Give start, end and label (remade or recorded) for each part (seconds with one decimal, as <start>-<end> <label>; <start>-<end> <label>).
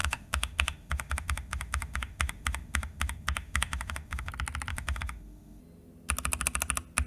0.0-4.3 remade; 4.3-4.7 recorded; 4.7-5.6 remade; 5.6-7.1 recorded